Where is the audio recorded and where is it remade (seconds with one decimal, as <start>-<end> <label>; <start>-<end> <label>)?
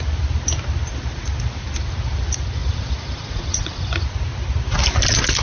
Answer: 0.0-2.6 recorded; 2.6-3.8 remade; 3.8-5.4 recorded